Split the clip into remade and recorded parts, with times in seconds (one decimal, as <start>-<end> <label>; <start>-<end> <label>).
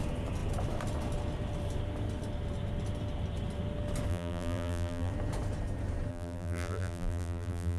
0.0-4.1 recorded; 4.1-5.1 remade; 5.1-6.1 recorded; 6.1-7.8 remade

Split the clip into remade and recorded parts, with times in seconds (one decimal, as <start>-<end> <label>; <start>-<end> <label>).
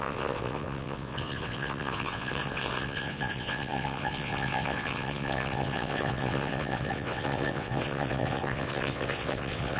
0.0-9.8 remade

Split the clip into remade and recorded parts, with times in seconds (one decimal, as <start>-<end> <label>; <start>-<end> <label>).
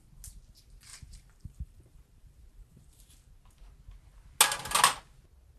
0.0-0.9 recorded; 0.9-3.3 remade; 3.3-5.6 recorded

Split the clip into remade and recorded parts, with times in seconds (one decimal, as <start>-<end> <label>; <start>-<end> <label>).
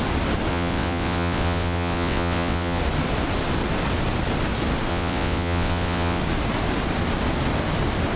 0.0-0.5 recorded; 0.5-2.8 remade; 2.8-4.9 recorded; 4.9-6.2 remade; 6.2-8.2 recorded